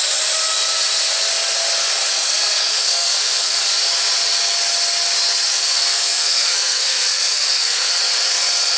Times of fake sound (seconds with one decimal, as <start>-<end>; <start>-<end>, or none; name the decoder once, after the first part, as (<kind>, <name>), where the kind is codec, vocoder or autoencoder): 2.1-3.6 (codec, SNAC); 5.5-7.9